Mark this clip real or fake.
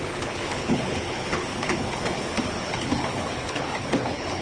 fake